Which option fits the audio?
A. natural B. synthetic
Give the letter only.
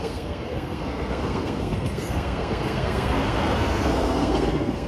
B